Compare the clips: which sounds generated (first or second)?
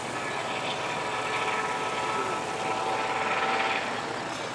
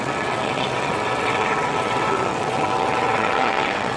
second